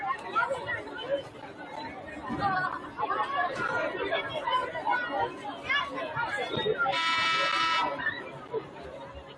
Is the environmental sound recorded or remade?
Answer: remade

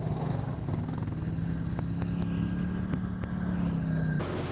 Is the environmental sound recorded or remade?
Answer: recorded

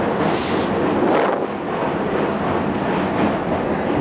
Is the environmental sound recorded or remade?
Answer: recorded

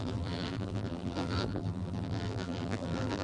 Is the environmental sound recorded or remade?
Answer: remade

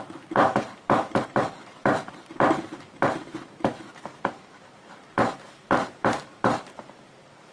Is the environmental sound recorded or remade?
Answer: remade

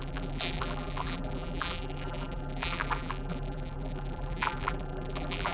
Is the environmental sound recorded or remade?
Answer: remade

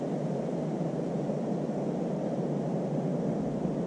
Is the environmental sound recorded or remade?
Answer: recorded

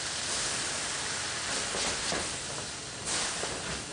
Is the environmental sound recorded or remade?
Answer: recorded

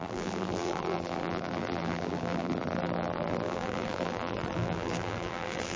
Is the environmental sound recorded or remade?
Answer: remade